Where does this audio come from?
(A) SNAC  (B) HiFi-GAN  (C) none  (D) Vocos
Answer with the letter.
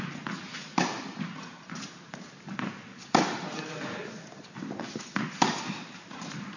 C